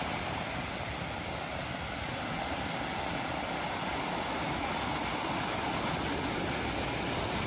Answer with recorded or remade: recorded